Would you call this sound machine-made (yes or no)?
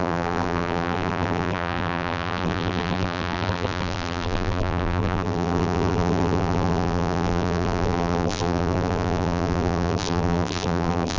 yes